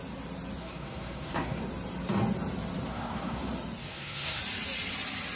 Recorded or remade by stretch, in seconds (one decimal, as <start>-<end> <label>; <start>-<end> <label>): 0.0-0.6 recorded; 0.6-1.6 remade; 1.6-2.9 recorded; 2.9-3.4 remade; 3.4-3.8 recorded; 3.8-4.4 remade; 4.4-5.4 recorded